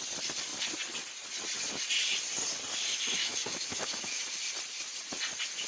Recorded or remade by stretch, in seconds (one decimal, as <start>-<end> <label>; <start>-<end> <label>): 0.0-2.9 recorded; 2.9-4.2 remade; 4.2-5.7 recorded